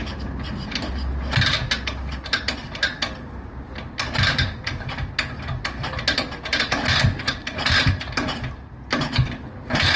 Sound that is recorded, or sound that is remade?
recorded